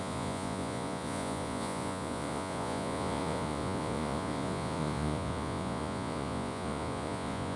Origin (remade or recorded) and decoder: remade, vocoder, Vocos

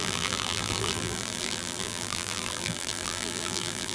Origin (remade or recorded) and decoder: remade, vocoder, BigVGAN v2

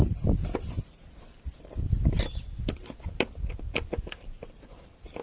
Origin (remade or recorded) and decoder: recorded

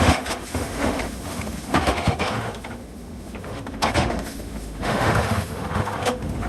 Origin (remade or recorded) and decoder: remade, autoencoder, DAC-VAE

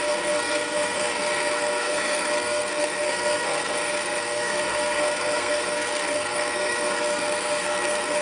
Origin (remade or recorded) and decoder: remade, codec, SNAC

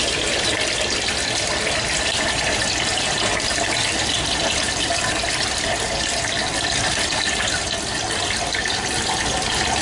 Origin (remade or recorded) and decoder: remade, vocoder, BigVGAN v2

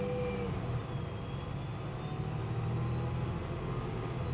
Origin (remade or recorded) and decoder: recorded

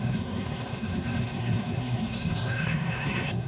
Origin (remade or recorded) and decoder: remade, codec, SNAC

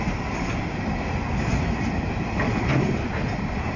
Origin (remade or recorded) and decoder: recorded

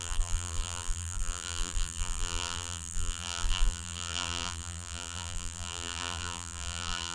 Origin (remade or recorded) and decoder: remade, vocoder, BigVGAN v2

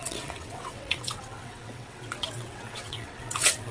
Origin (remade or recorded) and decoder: remade, vocoder, WaveNeXt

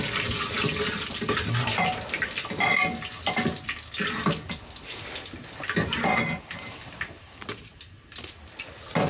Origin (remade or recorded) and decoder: recorded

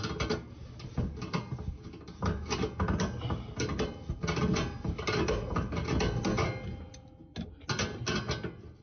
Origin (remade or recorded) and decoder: recorded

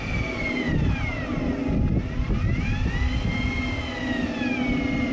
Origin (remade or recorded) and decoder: recorded